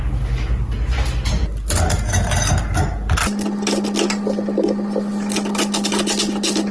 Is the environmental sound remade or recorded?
recorded